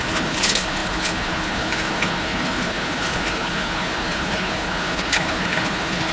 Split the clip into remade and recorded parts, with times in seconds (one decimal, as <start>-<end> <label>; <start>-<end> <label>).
0.0-6.1 remade